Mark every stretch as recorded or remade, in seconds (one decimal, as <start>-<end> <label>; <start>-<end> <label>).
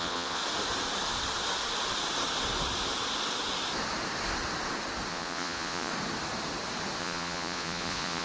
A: 0.0-0.4 remade; 0.4-5.1 recorded; 5.1-5.9 remade; 5.9-7.0 recorded; 7.0-8.2 remade